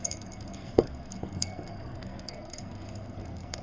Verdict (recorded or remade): remade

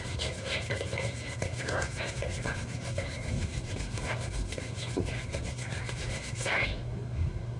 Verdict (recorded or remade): remade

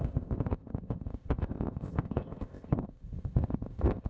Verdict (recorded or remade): remade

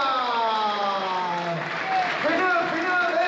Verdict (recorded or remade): recorded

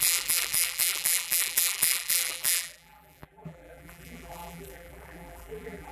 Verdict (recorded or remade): remade